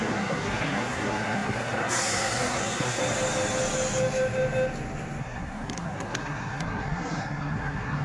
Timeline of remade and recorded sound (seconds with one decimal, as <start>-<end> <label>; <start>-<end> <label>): 0.0-3.0 remade; 3.0-5.2 recorded; 5.2-8.0 remade